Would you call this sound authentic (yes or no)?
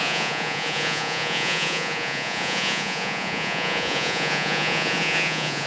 no